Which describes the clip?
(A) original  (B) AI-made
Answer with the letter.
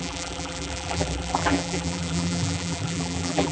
B